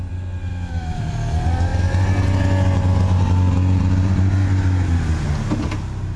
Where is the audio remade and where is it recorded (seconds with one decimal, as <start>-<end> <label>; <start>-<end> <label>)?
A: 0.0-0.5 recorded; 0.5-1.1 remade; 1.1-6.2 recorded